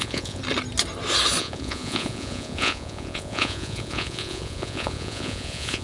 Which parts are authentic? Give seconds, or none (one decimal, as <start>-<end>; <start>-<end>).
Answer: 0.4-1.4